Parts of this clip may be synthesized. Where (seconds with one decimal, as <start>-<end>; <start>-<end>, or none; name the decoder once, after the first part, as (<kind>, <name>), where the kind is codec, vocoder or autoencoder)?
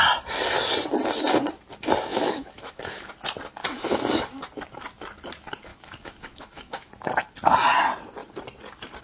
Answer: 2.1-3.1 (autoencoder, DAC-VAE); 3.6-4.2; 5.7-7.0